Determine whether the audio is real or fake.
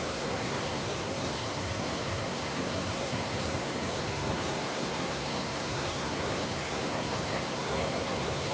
fake